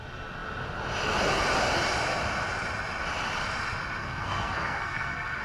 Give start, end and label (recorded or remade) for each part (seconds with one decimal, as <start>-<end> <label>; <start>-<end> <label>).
0.0-4.0 recorded; 4.0-5.4 remade